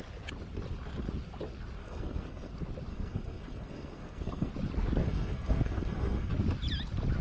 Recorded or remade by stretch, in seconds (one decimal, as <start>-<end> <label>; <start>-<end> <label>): 0.0-1.8 recorded; 1.8-2.5 remade; 2.5-2.9 recorded; 2.9-4.5 remade; 4.5-5.0 recorded; 5.0-6.3 remade; 6.3-7.2 recorded